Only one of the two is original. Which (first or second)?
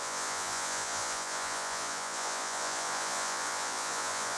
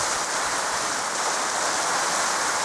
second